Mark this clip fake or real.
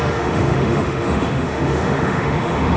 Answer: fake